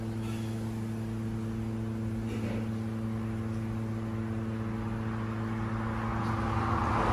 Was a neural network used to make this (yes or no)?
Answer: no